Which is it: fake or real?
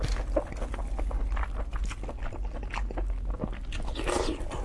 real